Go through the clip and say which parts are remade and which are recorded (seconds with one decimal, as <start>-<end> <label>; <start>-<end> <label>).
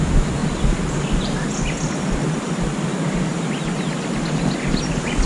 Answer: 0.0-0.4 recorded; 0.4-3.6 remade; 3.6-5.3 recorded